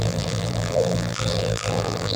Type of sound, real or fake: fake